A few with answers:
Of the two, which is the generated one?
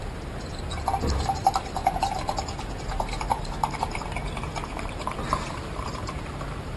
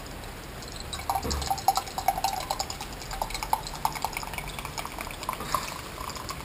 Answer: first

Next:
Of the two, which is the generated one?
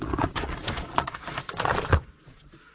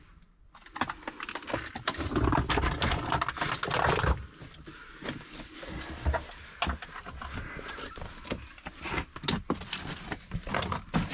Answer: first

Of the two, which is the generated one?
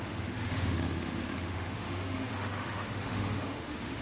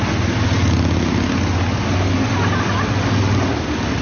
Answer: first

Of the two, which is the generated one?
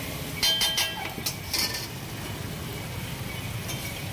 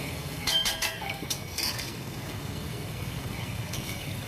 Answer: second